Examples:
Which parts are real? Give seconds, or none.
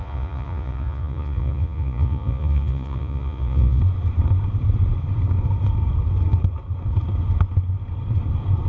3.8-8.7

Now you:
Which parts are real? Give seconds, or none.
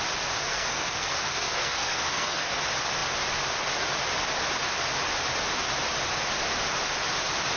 0.0-0.4; 2.6-7.6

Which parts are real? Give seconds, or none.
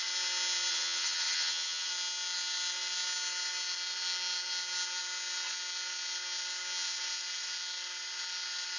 0.0-0.7; 1.9-8.8